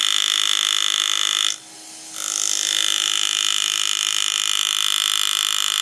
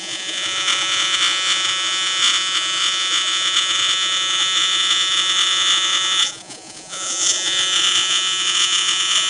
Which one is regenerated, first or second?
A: second